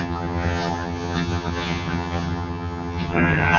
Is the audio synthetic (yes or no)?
yes